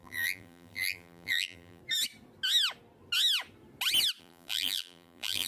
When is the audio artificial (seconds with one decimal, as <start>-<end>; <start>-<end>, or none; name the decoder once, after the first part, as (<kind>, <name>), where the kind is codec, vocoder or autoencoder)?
0.0-1.8 (vocoder, BigVGAN v2); 4.2-5.5